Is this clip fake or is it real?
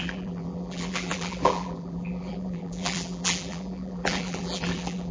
fake